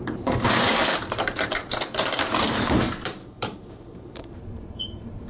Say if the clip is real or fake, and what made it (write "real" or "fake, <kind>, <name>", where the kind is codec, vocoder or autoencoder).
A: fake, vocoder, BigVGAN v2